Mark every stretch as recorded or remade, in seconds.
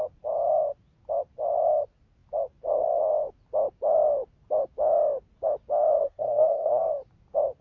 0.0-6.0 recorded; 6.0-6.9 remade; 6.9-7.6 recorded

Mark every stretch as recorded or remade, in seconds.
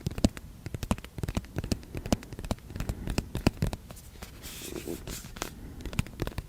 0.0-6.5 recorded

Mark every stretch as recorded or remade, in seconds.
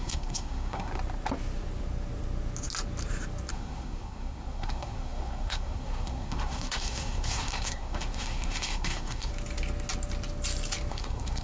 0.0-0.9 remade; 0.9-3.5 recorded; 3.5-9.3 remade; 9.3-10.9 recorded; 10.9-11.4 remade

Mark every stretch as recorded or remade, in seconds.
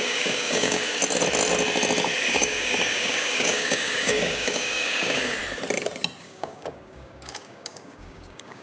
0.0-1.0 remade; 1.0-2.3 recorded; 2.3-5.4 remade; 5.4-6.2 recorded; 6.2-8.6 remade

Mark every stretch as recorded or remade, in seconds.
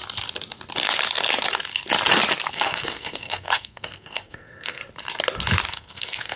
0.0-2.5 recorded; 2.5-4.8 remade; 4.8-5.7 recorded; 5.7-6.4 remade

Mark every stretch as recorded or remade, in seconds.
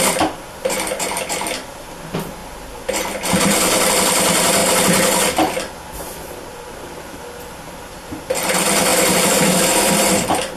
0.0-8.9 recorded; 8.9-10.6 remade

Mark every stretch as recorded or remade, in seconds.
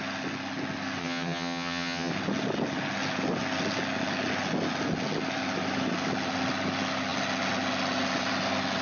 0.0-1.0 recorded; 1.0-2.1 remade; 2.1-8.8 recorded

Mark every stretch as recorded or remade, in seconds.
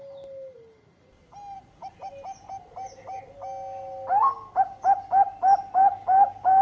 0.0-1.8 recorded; 1.8-2.5 remade; 2.5-6.6 recorded